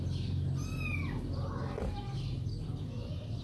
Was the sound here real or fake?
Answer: real